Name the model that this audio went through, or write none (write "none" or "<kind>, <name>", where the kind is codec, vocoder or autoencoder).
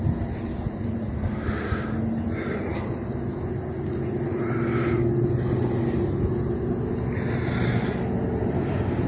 none